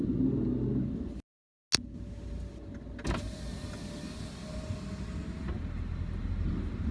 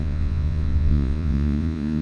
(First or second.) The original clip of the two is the first